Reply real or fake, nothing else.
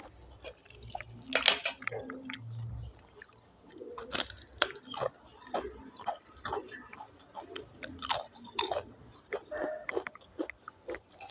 real